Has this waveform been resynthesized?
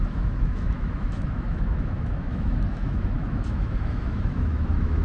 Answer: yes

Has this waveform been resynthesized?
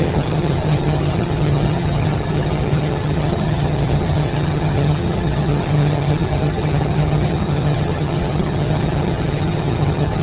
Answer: yes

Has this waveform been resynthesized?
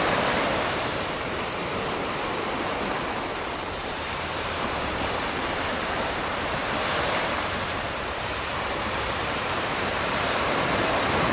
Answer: yes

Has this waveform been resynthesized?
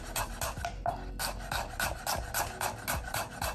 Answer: no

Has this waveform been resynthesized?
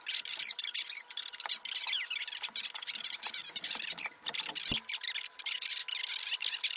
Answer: no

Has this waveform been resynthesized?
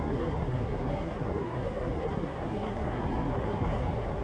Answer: yes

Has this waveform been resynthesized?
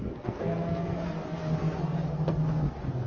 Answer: yes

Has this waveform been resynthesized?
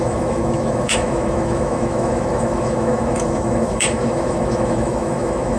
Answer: yes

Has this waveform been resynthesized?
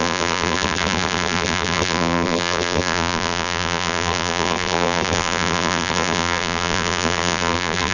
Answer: yes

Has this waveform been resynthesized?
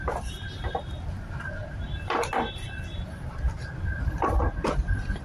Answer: yes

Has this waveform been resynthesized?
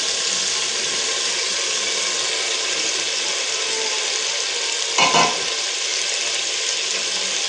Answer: no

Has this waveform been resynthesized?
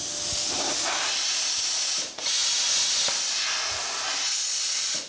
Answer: no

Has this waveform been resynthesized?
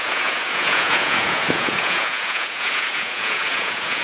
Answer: yes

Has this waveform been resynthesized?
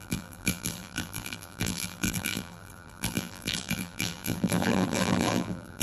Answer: yes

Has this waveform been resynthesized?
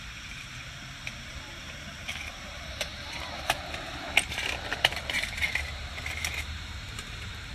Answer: yes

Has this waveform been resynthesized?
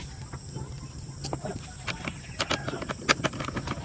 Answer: no